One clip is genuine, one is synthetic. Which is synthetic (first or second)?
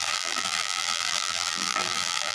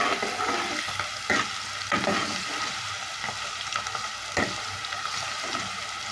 first